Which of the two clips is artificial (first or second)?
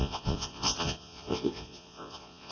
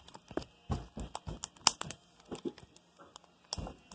first